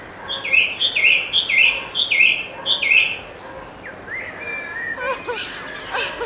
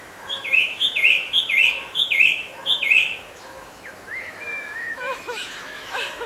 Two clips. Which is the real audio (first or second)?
first